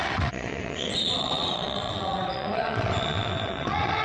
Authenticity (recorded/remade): remade